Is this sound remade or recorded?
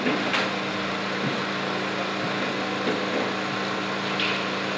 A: recorded